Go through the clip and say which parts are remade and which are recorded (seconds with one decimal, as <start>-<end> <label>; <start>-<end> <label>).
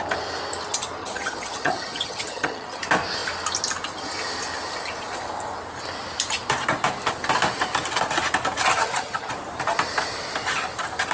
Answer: 0.0-1.0 recorded; 1.0-2.8 remade; 2.8-8.7 recorded; 8.7-9.3 remade; 9.3-11.1 recorded